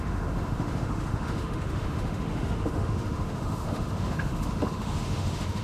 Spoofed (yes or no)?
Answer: yes